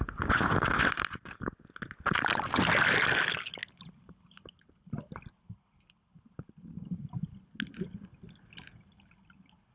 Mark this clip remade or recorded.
recorded